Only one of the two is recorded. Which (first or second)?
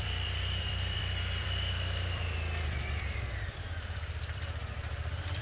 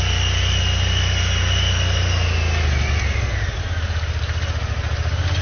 second